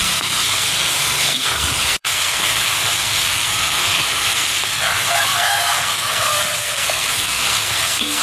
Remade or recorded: remade